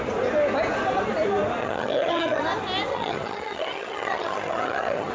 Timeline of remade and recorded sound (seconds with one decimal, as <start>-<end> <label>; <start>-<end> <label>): 0.0-1.6 recorded; 1.6-2.4 remade; 2.4-2.9 recorded; 2.9-5.1 remade